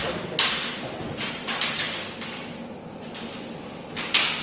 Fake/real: real